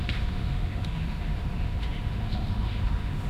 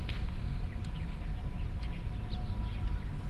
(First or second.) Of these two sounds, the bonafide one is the second